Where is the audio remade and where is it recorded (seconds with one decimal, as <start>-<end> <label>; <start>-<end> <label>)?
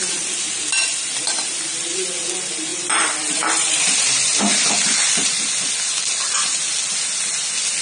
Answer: 0.0-2.7 recorded; 2.7-5.7 remade; 5.7-7.8 recorded